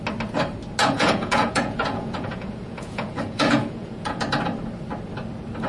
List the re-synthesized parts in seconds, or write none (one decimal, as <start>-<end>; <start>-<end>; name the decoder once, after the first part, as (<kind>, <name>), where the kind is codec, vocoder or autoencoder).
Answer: 0.8-4.2 (vocoder, Vocos)